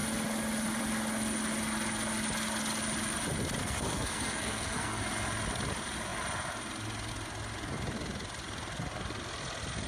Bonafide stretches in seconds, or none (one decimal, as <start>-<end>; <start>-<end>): 0.0-3.6; 5.0-9.9